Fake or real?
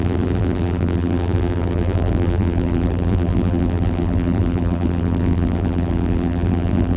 fake